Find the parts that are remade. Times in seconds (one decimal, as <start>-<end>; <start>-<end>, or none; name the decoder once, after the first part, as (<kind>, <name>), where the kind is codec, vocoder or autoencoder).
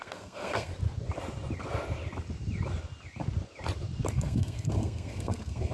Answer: 0.0-0.7 (codec, SNAC); 4.1-5.7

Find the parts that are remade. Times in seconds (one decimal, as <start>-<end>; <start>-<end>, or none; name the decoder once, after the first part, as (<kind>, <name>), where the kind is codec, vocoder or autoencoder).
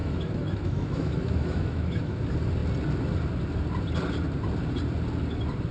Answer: 0.0-2.2 (autoencoder, DAC-VAE)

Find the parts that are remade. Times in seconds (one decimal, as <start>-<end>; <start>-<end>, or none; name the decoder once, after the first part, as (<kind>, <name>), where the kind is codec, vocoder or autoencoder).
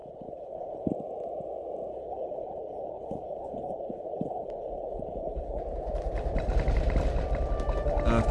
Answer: 0.0-0.9 (codec, HILCodec); 1.9-5.6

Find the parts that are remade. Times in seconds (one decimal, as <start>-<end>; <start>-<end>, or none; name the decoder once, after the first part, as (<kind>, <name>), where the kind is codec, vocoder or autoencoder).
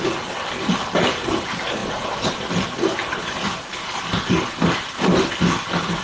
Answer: 1.8-2.4 (vocoder, BigVGAN v2)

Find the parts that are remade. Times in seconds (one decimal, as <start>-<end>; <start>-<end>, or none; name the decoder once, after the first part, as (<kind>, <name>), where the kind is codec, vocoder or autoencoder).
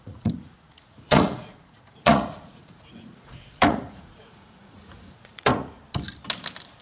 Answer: 0.0-5.8 (vocoder, Vocos)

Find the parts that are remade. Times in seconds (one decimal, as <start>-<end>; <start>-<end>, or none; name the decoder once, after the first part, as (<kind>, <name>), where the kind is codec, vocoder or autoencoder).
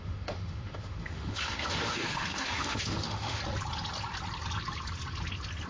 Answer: 0.0-3.4 (autoencoder, DAC-VAE)